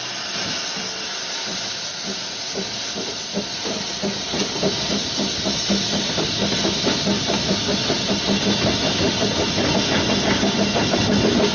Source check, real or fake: real